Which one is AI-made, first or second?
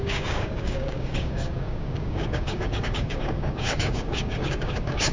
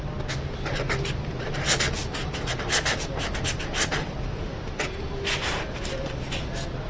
first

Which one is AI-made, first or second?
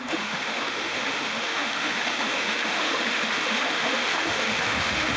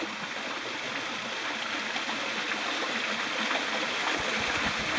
first